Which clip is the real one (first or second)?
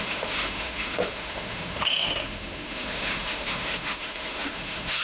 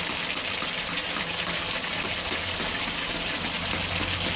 second